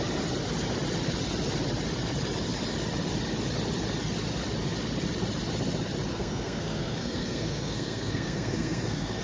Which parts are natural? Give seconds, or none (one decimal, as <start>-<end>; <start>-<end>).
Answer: 0.0-6.1